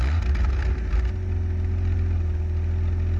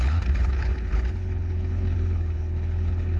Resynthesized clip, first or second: second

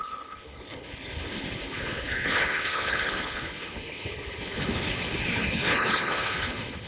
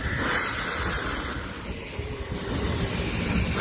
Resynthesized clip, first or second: first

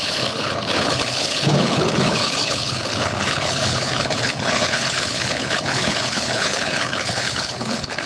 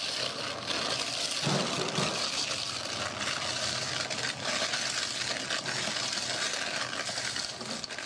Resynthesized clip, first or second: first